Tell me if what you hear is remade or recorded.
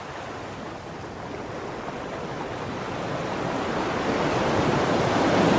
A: recorded